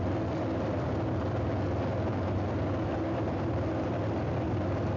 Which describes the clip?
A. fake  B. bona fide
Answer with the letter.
B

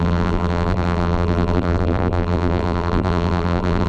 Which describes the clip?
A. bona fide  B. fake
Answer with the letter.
B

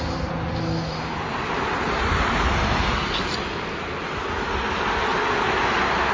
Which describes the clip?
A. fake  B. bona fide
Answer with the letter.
B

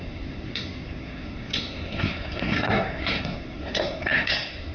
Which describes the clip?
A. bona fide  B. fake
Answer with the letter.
B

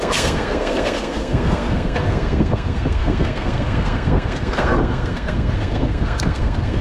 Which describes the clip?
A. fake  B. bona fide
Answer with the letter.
A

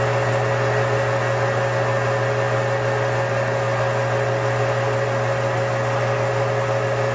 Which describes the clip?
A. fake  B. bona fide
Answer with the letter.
B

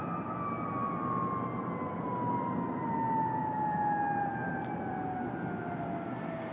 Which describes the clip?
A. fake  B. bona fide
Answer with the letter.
B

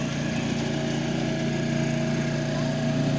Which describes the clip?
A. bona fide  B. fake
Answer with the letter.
A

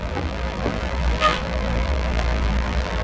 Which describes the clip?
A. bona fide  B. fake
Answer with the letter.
B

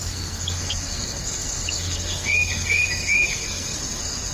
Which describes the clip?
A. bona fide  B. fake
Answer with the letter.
B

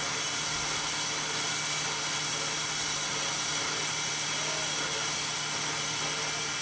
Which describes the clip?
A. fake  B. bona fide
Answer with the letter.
B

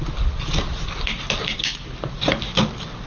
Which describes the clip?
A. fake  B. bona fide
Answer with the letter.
B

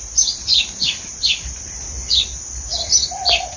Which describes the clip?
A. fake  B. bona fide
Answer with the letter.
A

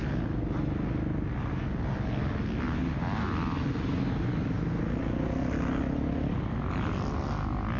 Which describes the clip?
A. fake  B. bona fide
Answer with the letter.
B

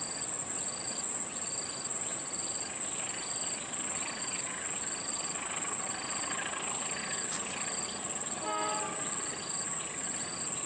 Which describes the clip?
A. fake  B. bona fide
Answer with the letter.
B